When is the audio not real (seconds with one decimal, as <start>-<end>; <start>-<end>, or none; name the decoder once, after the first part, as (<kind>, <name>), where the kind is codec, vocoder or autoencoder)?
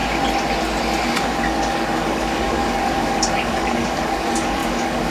1.0-5.1 (codec, DAC)